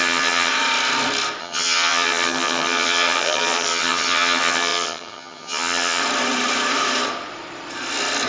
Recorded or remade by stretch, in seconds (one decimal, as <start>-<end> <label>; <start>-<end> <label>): 0.0-0.5 remade; 0.5-1.4 recorded; 1.4-6.0 remade; 6.0-8.3 recorded